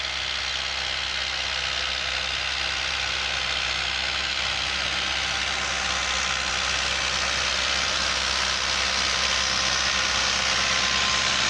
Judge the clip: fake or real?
real